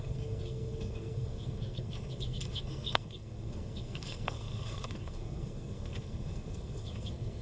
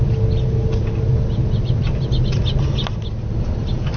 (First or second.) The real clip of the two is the second